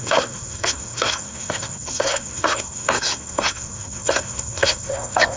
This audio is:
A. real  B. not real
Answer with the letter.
B